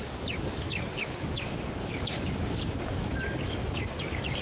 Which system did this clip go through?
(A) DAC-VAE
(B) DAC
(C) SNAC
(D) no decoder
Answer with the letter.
B